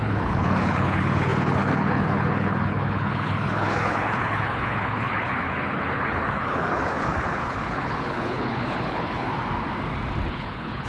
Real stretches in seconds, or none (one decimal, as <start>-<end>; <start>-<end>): 9.3-10.3